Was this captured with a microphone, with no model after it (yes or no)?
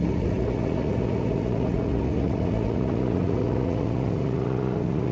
no